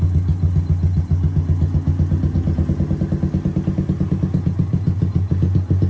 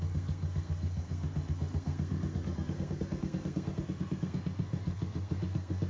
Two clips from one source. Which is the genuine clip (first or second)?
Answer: first